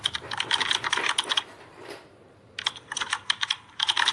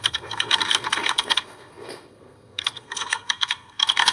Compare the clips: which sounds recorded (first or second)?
first